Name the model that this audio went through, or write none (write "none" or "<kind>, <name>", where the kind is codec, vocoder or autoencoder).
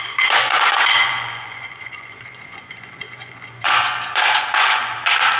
vocoder, Vocos